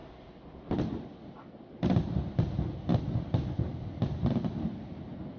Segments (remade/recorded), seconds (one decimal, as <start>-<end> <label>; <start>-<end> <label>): 0.0-5.4 recorded

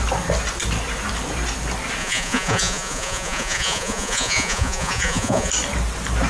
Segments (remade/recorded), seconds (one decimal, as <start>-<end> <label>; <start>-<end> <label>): 0.0-2.0 recorded; 2.0-5.5 remade; 5.5-6.3 recorded

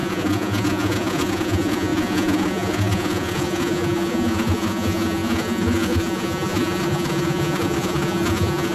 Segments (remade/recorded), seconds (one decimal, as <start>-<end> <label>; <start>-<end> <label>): 0.0-8.7 remade

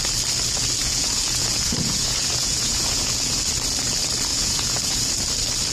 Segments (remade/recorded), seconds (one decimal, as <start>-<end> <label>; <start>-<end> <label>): 0.0-0.8 recorded; 0.8-3.4 remade; 3.4-4.3 recorded; 4.3-5.0 remade; 5.0-5.7 recorded

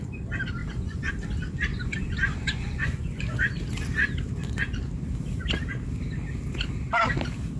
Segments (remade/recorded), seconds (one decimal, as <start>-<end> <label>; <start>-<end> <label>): 0.0-0.6 recorded; 0.6-1.1 remade; 1.1-1.7 recorded; 1.7-3.5 remade; 3.5-7.6 recorded

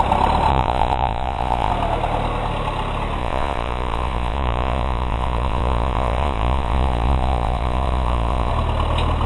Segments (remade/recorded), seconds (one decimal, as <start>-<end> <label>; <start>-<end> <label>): 0.0-0.5 recorded; 0.5-1.7 remade; 1.7-3.2 recorded; 3.2-8.5 remade; 8.5-9.3 recorded